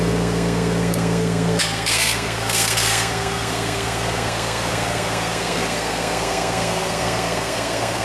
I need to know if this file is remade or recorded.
remade